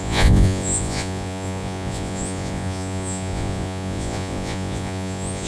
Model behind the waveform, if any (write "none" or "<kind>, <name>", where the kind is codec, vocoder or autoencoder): vocoder, Vocos